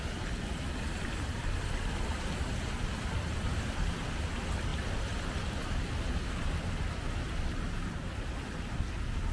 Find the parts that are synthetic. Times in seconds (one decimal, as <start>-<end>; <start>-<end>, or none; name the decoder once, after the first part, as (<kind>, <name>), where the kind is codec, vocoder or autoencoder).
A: none